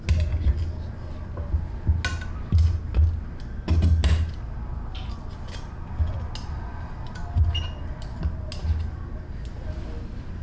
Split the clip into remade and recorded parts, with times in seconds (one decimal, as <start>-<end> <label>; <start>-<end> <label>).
0.0-10.4 recorded